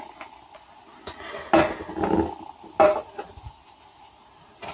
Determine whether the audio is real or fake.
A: real